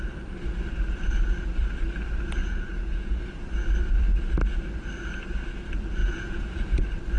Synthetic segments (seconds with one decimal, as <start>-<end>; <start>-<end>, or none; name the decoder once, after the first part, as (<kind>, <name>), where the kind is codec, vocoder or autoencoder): 2.4-3.2 (vocoder, Vocos); 6.0-6.8